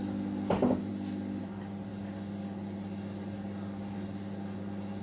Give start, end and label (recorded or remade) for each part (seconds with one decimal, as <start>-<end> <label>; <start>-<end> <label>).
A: 0.0-5.0 recorded